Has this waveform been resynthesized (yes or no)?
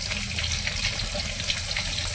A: no